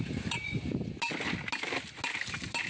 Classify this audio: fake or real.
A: real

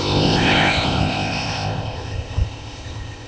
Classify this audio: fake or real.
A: fake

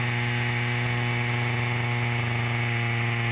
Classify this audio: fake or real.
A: real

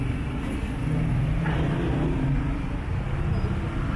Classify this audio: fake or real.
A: real